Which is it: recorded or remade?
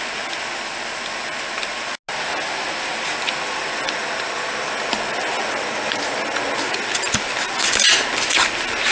recorded